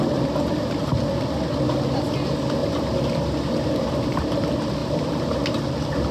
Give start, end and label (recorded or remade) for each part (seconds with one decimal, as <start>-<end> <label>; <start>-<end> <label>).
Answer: 0.0-2.6 recorded; 2.6-3.9 remade; 3.9-4.8 recorded; 4.8-5.4 remade; 5.4-6.1 recorded